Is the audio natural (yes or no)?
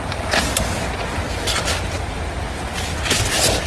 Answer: yes